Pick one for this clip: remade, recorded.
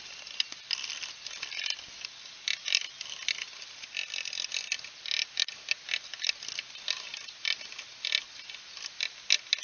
recorded